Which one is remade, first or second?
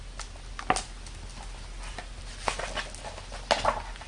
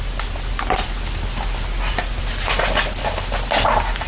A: second